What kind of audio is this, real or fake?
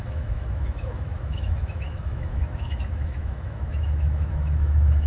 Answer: fake